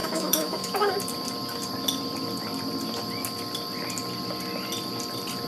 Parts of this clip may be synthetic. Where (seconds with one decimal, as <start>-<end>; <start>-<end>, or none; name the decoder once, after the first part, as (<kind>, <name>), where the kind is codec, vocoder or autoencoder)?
0.0-0.9 (autoencoder, DAC-VAE)